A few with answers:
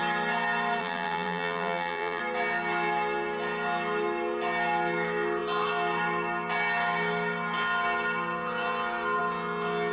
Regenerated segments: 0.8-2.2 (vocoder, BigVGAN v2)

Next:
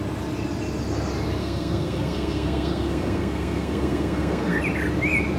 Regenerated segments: 1.4-4.6 (codec, SNAC)

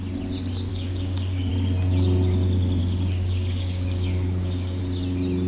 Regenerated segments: 0.7-1.5 (codec, DAC); 2.8-4.8

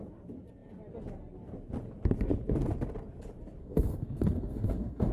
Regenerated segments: 3.6-5.1 (codec, SNAC)